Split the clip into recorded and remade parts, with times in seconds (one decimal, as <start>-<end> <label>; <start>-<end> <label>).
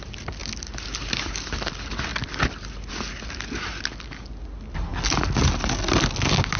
0.0-6.6 recorded